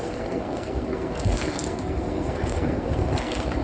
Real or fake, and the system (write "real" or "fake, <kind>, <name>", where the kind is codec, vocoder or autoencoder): fake, codec, SNAC